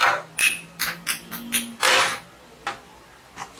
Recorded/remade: recorded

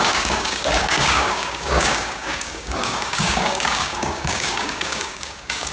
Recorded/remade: remade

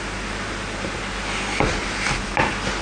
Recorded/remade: recorded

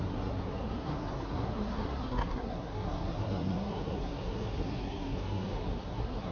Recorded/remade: remade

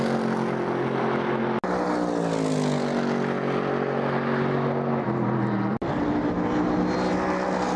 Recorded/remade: recorded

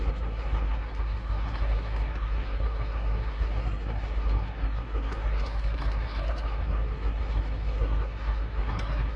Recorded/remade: remade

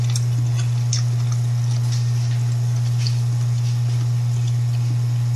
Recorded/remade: recorded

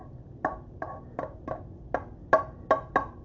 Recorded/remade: recorded